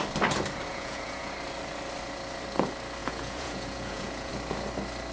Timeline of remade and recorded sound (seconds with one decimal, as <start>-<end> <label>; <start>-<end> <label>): 0.0-0.7 recorded; 0.7-1.3 remade; 1.3-3.0 recorded; 3.0-4.3 remade; 4.3-5.1 recorded